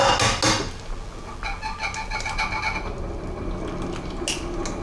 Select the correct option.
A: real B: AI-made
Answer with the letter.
A